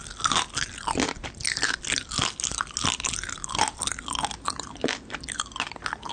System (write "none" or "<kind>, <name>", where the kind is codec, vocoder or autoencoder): none